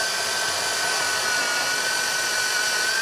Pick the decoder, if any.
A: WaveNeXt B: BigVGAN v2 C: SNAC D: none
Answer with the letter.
D